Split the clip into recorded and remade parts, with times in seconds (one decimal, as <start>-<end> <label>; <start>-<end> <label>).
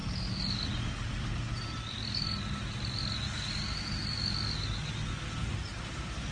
0.0-6.3 recorded